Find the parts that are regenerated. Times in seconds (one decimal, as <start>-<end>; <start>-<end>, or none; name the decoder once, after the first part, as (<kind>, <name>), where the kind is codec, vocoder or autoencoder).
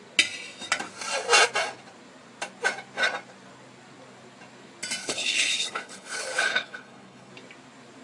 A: 5.0-7.3 (codec, HILCodec)